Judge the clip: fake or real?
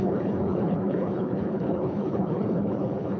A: fake